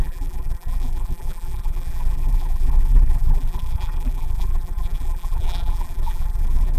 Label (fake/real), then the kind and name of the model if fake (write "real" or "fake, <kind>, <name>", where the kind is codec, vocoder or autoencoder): fake, vocoder, BigVGAN v2